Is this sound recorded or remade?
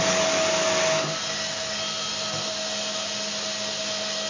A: recorded